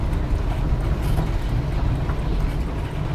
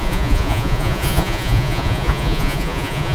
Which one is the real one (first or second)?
first